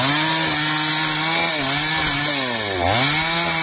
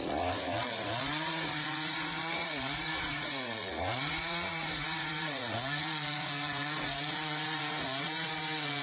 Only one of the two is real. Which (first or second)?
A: first